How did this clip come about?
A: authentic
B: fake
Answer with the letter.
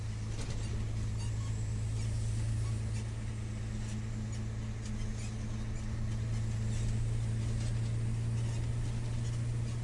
A